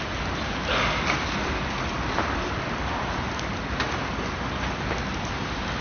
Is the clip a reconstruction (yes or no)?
no